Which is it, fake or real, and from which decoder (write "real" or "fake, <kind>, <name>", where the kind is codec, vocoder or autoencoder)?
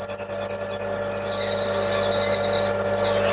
real